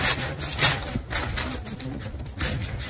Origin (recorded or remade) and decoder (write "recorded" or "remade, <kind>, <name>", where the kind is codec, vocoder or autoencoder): recorded